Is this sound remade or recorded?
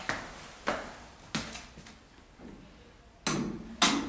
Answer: recorded